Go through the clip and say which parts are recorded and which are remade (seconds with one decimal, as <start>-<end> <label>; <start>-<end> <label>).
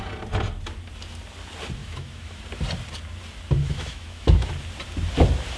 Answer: 0.0-1.8 recorded; 1.8-2.4 remade; 2.4-3.6 recorded; 3.6-4.5 remade; 4.5-5.6 recorded